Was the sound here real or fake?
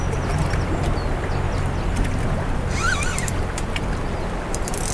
real